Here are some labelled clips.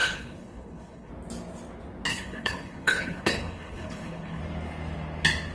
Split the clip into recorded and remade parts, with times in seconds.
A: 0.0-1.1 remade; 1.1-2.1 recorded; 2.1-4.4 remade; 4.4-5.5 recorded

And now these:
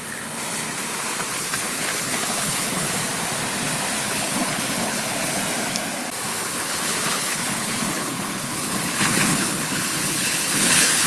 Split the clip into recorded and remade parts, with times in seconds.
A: 0.0-1.3 recorded; 1.3-2.9 remade; 2.9-4.0 recorded; 4.0-5.4 remade; 5.4-6.3 recorded; 6.3-11.1 remade

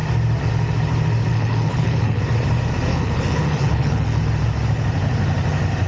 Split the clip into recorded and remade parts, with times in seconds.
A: 0.0-1.3 recorded; 1.3-2.2 remade; 2.2-2.9 recorded; 2.9-4.2 remade; 4.2-5.9 recorded

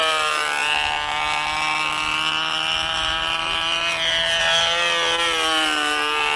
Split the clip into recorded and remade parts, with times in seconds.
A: 0.0-6.4 recorded

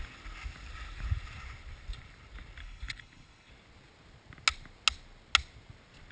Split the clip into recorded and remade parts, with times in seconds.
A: 0.0-2.6 recorded; 2.6-3.5 remade; 3.5-6.1 recorded

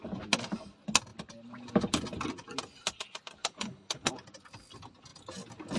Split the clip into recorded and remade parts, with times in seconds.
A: 0.0-3.4 recorded; 3.4-4.1 remade; 4.1-5.8 recorded

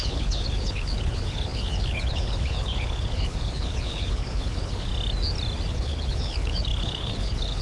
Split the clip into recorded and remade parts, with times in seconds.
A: 0.0-4.9 remade; 4.9-5.7 recorded; 5.7-7.6 remade

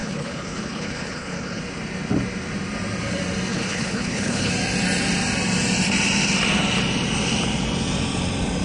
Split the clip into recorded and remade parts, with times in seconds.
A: 0.0-1.6 remade; 1.6-3.5 recorded; 3.5-4.5 remade; 4.5-8.6 recorded